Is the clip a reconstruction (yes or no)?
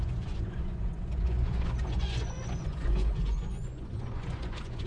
yes